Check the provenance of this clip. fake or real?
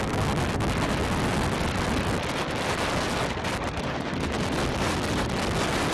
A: real